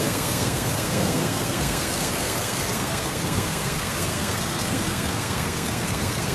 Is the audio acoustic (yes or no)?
no